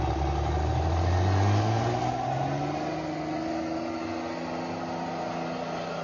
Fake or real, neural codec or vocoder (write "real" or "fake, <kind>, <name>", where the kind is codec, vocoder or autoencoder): real